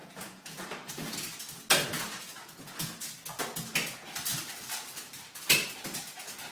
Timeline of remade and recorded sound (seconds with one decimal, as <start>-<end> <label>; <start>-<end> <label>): 0.0-0.9 remade; 0.9-2.3 recorded; 2.3-3.0 remade; 3.0-6.5 recorded